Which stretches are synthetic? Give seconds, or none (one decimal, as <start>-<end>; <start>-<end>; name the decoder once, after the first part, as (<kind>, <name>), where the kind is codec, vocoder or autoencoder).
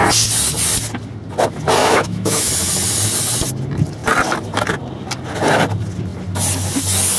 1.8-2.5 (autoencoder, DAC-VAE)